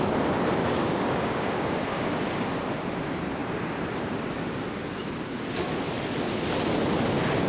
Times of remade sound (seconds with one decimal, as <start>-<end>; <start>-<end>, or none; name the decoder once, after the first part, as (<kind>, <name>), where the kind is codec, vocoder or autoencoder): 0.6-2.0 (codec, DAC)